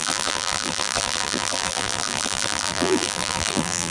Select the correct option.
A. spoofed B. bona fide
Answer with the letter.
A